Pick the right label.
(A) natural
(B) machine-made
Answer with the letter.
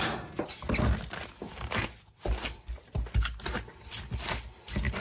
A